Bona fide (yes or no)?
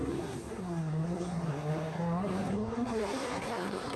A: no